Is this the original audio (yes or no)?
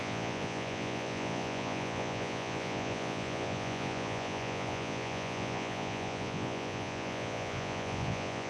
no